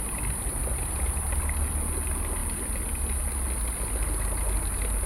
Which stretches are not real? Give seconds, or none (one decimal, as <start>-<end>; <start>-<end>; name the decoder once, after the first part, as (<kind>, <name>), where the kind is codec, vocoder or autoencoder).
0.6-1.4 (vocoder, BigVGAN v2)

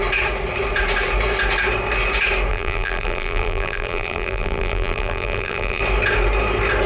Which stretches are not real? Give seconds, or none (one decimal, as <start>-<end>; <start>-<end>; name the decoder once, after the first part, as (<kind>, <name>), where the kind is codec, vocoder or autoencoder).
2.5-5.8 (vocoder, BigVGAN v2)

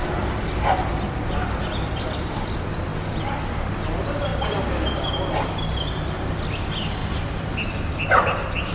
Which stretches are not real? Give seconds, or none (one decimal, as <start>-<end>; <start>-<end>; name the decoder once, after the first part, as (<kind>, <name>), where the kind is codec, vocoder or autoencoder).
0.0-2.9 (vocoder, BigVGAN v2); 3.7-4.3; 6.6-7.0; 8.1-8.7

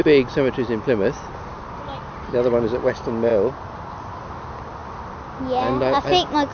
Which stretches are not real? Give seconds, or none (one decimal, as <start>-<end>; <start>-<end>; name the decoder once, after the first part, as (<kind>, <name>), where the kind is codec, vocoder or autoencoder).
3.3-4.0 (vocoder, BigVGAN v2)